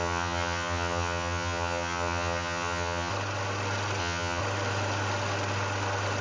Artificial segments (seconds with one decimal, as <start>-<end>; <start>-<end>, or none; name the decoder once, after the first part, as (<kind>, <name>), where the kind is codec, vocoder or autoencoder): 0.0-3.1 (vocoder, HiFi-GAN); 4.0-4.4